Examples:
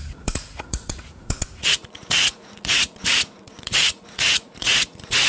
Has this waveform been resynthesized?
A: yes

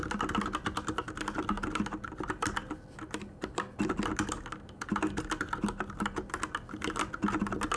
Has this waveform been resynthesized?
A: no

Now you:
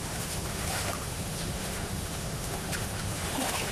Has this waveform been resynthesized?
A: yes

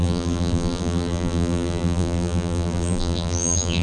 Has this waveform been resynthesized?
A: yes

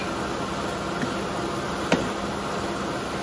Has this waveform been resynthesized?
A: no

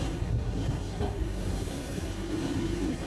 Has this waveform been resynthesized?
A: yes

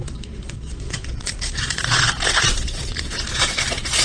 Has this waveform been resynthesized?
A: yes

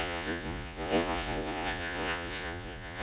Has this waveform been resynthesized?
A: yes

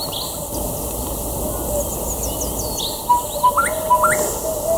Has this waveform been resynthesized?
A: no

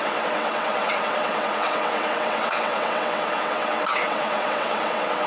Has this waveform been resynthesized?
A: yes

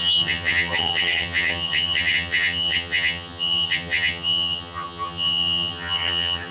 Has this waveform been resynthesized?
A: yes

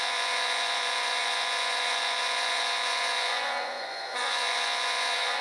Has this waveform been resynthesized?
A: yes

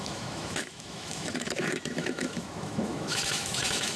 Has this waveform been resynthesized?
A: yes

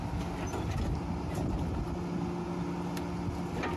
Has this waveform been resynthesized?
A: no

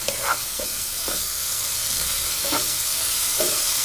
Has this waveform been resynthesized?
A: yes